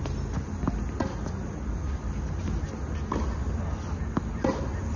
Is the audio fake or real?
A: real